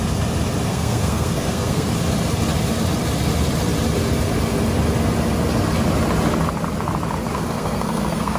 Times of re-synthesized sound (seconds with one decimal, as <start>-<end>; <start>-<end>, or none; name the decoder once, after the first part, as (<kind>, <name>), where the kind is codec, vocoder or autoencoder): 0.7-1.9 (codec, SNAC); 7.3-8.4